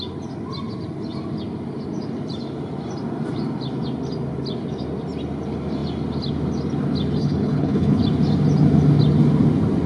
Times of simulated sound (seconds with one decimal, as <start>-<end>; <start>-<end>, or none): 7.2-8.0